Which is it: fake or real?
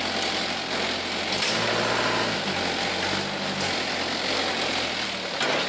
real